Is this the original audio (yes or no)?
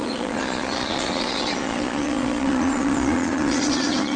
no